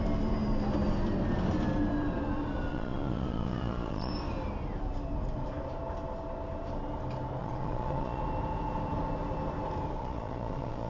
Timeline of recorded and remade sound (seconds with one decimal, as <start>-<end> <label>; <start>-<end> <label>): 0.0-2.7 recorded; 2.7-4.1 remade; 4.1-7.4 recorded; 7.4-8.2 remade; 8.2-10.0 recorded; 10.0-10.9 remade